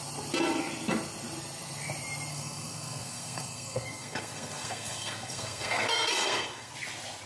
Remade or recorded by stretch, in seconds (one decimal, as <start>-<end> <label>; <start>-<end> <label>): 0.0-2.3 recorded; 2.3-6.7 remade; 6.7-7.3 recorded